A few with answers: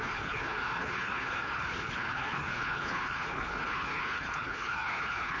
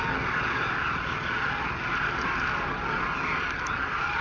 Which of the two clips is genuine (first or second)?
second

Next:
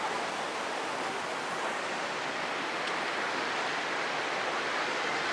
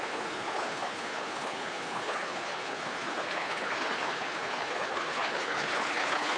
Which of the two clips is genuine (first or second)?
first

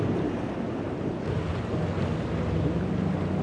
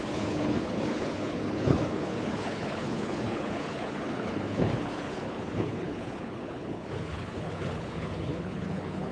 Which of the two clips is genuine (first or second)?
first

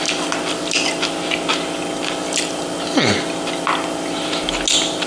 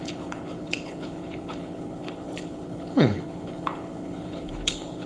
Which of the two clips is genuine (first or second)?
first